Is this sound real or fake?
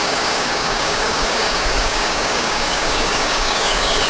fake